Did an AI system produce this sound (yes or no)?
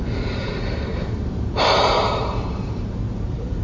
yes